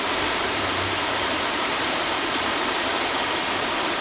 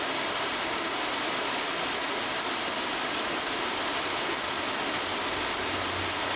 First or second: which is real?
second